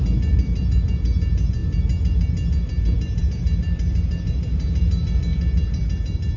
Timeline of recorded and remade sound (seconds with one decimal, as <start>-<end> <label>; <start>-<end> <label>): 0.0-6.4 recorded